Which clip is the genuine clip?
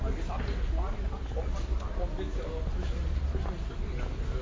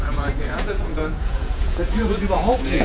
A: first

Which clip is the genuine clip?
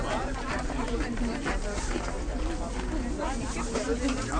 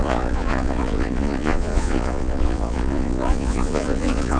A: first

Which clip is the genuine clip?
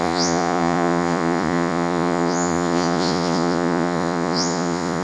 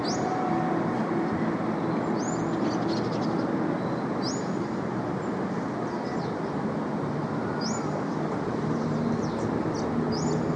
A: second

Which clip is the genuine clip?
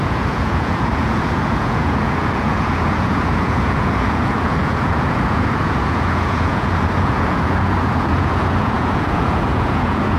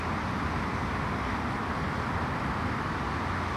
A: second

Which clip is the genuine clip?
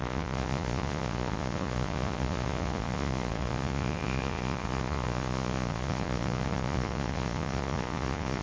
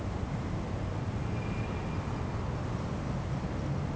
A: second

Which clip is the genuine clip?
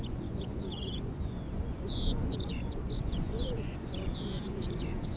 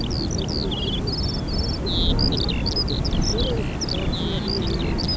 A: second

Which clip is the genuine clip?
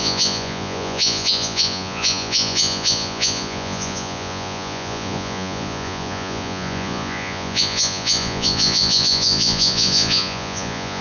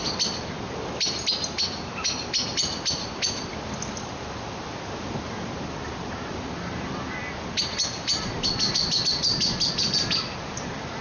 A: second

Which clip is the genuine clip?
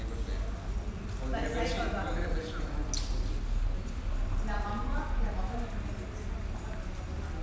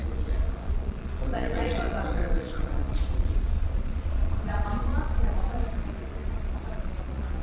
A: first